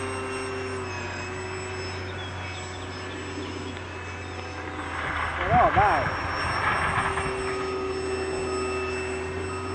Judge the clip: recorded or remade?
recorded